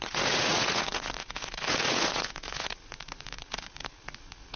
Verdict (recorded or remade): remade